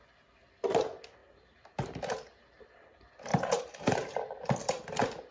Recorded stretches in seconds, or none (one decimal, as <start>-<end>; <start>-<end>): 0.0-1.2; 2.4-3.3; 4.5-5.3